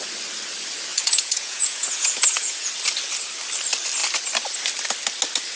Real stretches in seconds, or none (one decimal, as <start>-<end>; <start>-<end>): 0.0-0.9; 2.7-5.6

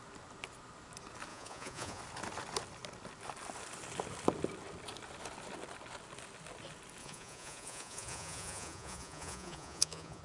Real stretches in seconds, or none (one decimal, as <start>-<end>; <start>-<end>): 0.0-1.3; 2.0-7.0

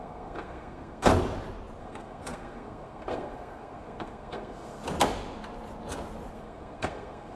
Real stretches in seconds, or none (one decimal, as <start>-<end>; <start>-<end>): 1.1-1.8; 4.8-6.3

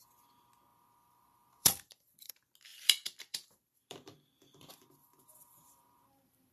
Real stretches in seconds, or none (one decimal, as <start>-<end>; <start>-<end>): 0.0-0.7; 2.3-2.7

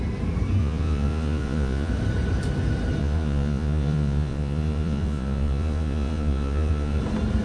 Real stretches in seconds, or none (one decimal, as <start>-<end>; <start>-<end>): 0.0-0.6; 1.9-3.0; 7.0-7.4

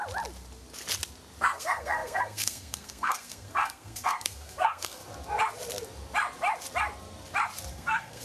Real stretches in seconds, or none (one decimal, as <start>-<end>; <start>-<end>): 0.0-1.4; 5.0-7.7